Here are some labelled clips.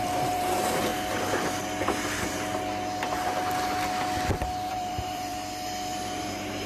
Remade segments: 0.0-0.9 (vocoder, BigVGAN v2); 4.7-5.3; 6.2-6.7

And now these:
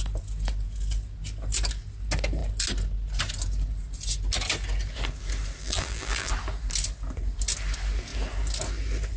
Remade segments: 5.6-6.3 (vocoder, BigVGAN v2)

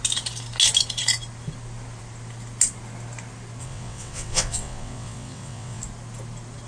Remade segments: 3.6-5.8 (vocoder, WaveNeXt)

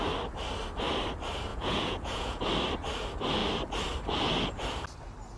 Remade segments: 1.5-2.4 (vocoder, Vocos)